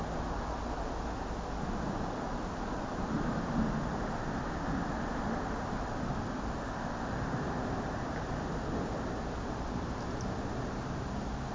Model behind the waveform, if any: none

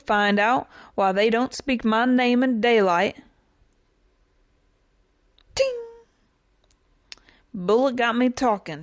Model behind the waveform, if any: none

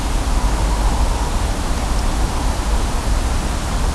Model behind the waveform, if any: none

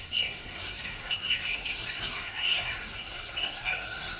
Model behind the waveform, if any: codec, SNAC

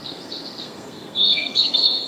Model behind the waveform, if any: codec, SNAC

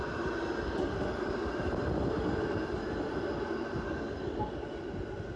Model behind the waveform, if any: none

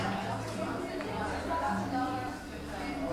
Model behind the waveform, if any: none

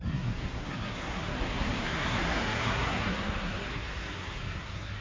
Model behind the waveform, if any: codec, SNAC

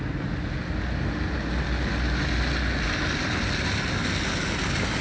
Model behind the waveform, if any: none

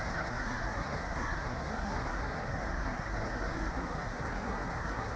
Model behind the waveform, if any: codec, SNAC